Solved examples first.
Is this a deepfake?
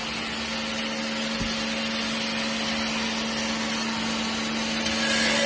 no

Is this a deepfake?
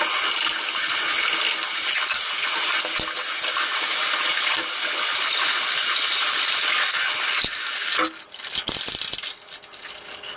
no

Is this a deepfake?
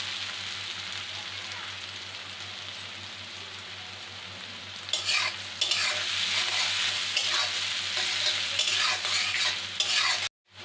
no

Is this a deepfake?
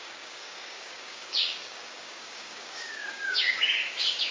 yes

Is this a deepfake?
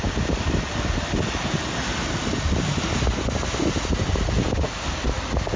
no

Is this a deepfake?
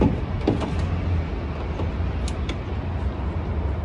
no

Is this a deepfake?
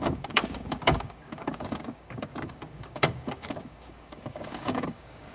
yes